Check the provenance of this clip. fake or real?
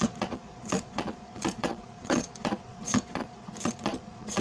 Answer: fake